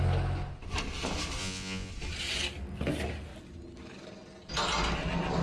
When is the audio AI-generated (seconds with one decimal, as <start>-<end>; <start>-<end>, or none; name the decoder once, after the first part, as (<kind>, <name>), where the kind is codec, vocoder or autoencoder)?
1.4-1.9 (vocoder, Vocos)